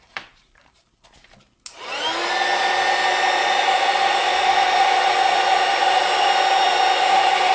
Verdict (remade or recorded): recorded